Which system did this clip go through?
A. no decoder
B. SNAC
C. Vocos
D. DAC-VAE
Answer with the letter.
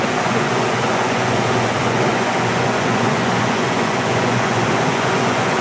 C